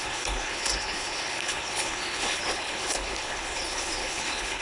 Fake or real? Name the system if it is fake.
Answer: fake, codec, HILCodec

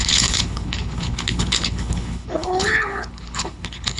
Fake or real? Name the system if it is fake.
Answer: fake, codec, HILCodec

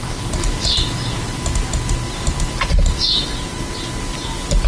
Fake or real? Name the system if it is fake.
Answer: real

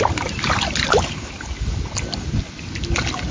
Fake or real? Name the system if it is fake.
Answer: real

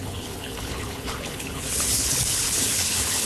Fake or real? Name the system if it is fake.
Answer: fake, codec, HILCodec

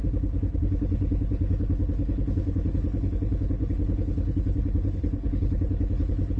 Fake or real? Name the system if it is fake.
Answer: fake, codec, HILCodec